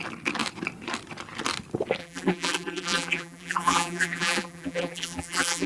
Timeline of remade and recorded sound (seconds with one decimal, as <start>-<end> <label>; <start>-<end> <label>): 0.0-2.0 recorded; 2.0-5.7 remade